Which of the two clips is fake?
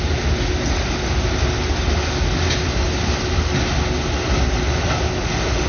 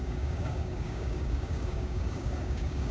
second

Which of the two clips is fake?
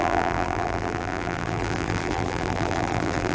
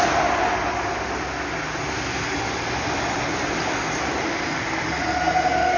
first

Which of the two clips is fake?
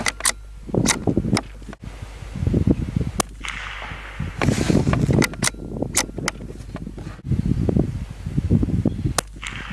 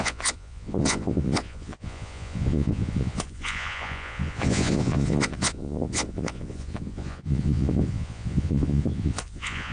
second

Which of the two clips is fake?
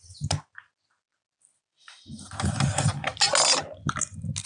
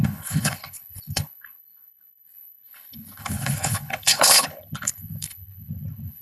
second